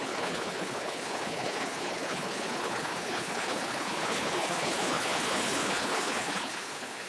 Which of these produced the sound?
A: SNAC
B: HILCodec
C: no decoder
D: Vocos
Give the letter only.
B